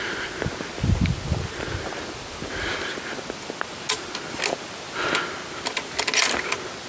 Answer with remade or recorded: recorded